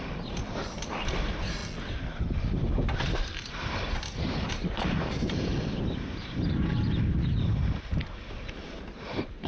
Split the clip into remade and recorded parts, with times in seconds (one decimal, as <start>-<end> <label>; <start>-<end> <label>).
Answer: 0.0-1.6 remade; 1.6-3.0 recorded; 3.0-9.5 remade